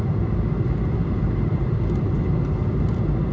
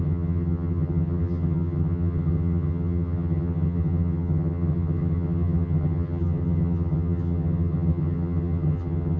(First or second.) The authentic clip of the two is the first